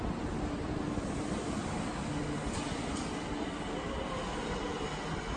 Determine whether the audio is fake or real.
real